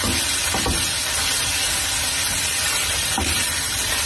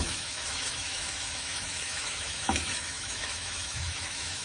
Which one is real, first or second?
first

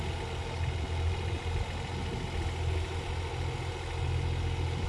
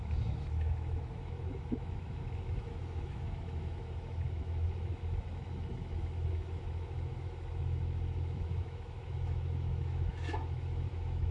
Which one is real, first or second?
first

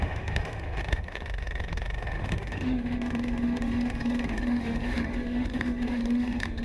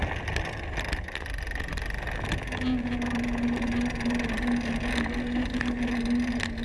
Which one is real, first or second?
second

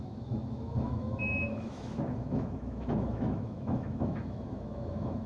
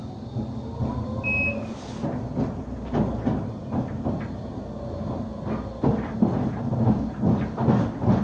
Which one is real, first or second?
second